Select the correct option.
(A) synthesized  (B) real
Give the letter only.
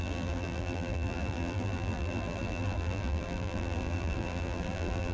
A